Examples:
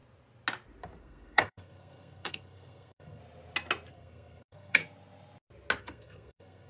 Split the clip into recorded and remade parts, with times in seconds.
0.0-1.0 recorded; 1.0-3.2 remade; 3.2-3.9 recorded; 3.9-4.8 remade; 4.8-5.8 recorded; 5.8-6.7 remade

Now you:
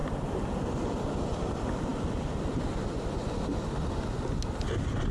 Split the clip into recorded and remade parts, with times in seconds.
0.0-5.1 recorded

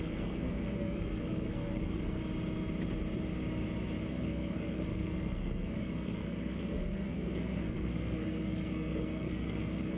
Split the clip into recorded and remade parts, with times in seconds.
0.0-2.2 remade; 2.2-4.1 recorded; 4.1-10.0 remade

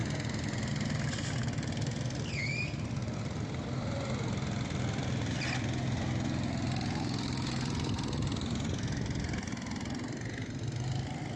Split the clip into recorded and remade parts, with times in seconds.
0.0-11.4 recorded